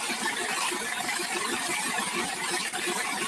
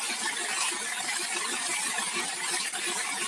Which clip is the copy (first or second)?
first